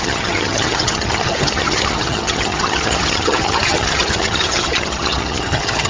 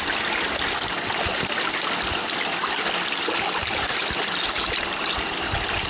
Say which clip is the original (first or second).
second